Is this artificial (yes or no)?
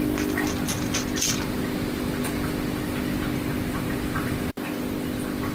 no